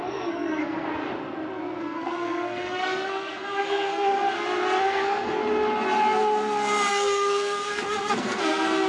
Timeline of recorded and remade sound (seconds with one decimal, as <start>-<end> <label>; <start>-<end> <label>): 0.0-0.9 remade; 0.9-1.8 recorded; 1.8-4.2 remade; 4.2-4.8 recorded; 4.8-5.4 remade; 5.4-6.9 recorded; 6.9-8.9 remade